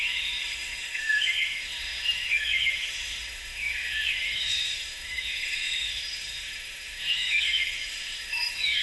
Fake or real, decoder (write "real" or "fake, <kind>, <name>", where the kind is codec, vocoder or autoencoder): fake, autoencoder, DAC-VAE